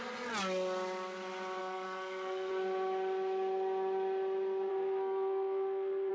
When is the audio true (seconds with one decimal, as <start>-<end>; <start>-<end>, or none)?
0.0-1.6; 2.5-4.7